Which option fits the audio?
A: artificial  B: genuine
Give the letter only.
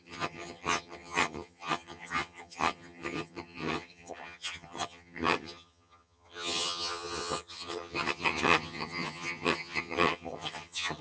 A